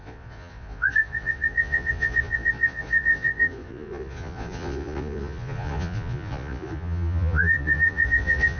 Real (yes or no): no